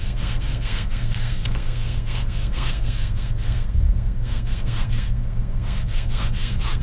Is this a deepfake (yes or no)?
yes